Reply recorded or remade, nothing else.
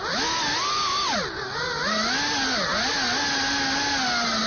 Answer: recorded